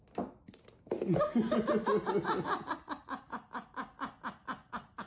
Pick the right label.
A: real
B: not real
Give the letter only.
A